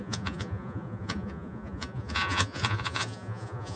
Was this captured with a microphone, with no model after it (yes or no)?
no